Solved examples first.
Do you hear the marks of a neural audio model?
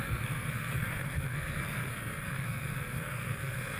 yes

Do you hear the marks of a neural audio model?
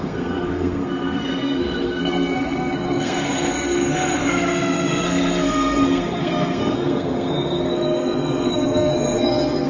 yes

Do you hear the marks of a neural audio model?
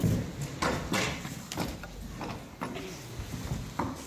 no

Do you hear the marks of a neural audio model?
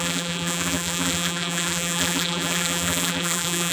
yes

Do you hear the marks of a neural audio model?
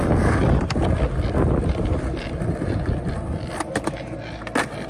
no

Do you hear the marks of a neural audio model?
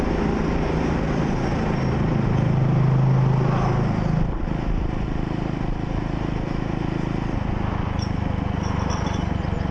no